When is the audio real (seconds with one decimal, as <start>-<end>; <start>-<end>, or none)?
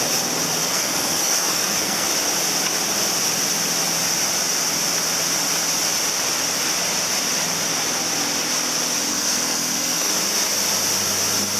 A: 0.0-0.6; 2.1-9.1; 10.1-11.6